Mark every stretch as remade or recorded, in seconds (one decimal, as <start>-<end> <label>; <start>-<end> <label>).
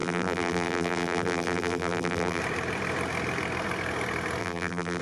0.0-2.4 remade; 2.4-4.4 recorded; 4.4-5.0 remade